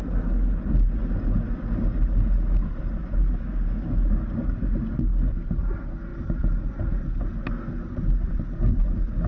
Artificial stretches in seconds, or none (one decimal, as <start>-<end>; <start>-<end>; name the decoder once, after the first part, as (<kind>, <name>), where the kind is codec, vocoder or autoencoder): none